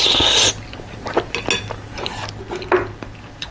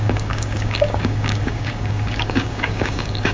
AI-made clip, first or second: second